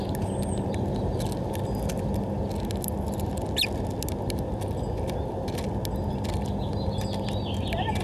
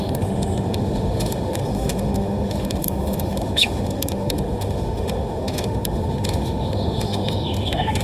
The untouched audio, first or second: first